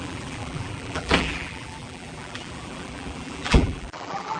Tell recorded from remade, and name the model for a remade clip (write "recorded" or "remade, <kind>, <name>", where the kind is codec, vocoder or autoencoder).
remade, vocoder, BigVGAN v2